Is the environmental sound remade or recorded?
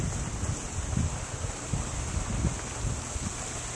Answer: recorded